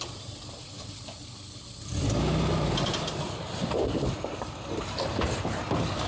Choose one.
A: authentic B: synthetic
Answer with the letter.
A